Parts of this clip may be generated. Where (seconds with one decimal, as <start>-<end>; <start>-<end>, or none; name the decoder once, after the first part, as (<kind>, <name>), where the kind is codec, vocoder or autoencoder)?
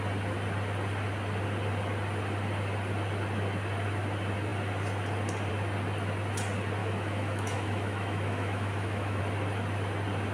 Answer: 6.8-9.2 (autoencoder, DAC-VAE)